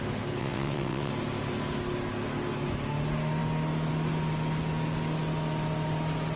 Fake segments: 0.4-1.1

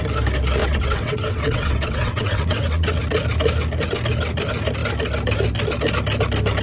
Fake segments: 0.6-3.0

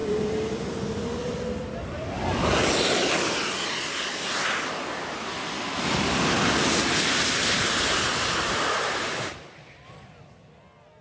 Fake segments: none

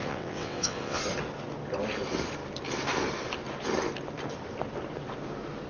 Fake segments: 0.0-1.0